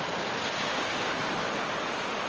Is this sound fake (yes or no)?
no